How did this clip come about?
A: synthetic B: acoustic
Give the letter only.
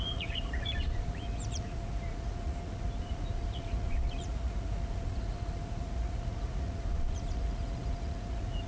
A